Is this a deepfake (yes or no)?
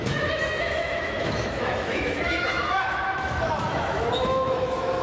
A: yes